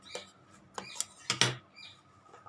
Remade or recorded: recorded